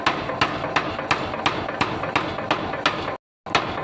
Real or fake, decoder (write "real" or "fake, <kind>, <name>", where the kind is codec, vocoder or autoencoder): real